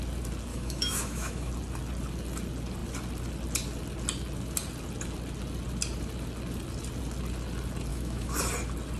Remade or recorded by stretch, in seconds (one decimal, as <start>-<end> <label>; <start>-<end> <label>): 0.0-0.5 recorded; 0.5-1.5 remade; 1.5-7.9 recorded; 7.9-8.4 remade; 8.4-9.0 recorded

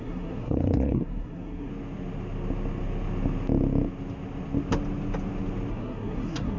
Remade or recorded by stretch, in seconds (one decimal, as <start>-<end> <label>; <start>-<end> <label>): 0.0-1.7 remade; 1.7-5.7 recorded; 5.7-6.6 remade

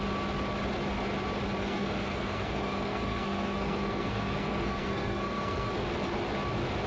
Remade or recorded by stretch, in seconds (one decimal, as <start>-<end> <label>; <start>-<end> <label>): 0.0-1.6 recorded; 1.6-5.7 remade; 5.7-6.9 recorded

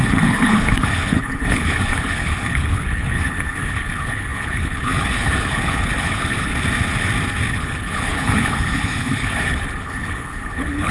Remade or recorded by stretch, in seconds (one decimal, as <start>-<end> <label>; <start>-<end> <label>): 0.0-6.5 remade; 6.5-7.5 recorded; 7.5-10.9 remade